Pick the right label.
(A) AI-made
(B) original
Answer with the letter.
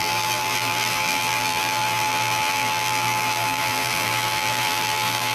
A